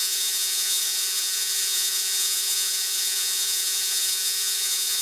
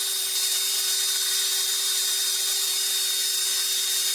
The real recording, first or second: second